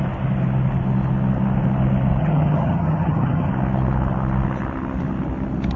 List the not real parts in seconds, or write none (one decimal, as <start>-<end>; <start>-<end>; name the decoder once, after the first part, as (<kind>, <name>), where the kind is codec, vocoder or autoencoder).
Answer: 2.2-3.5 (vocoder, HiFi-GAN)